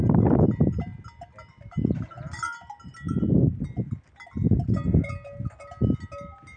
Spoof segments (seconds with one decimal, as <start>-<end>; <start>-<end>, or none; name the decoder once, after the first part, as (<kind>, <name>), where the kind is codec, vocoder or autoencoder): none